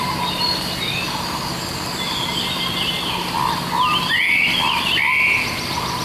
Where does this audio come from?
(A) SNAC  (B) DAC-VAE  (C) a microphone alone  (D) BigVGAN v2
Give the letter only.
C